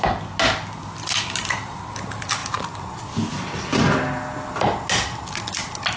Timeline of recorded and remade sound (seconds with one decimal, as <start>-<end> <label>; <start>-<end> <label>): 0.0-6.0 recorded